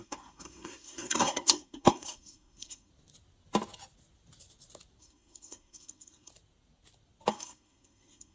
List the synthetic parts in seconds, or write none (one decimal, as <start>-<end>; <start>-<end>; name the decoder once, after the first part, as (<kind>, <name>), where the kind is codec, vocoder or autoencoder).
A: 0.0-2.9 (codec, SNAC); 5.0-6.3; 7.3-8.3